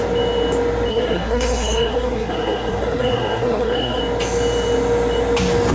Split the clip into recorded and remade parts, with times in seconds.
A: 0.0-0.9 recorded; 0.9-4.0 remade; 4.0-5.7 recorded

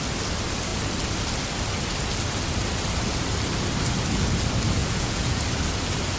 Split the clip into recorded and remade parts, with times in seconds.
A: 0.0-4.8 recorded; 4.8-5.4 remade; 5.4-6.2 recorded